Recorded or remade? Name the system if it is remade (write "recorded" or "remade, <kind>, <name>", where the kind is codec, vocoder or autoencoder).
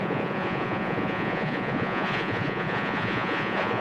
remade, vocoder, Vocos